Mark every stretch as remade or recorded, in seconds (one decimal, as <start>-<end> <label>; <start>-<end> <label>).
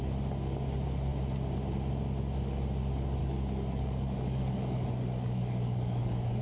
0.0-3.2 recorded; 3.2-6.4 remade